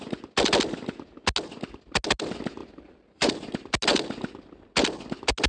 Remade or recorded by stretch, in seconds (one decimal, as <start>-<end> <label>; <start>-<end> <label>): 0.0-2.6 recorded; 2.6-3.3 remade; 3.3-5.5 recorded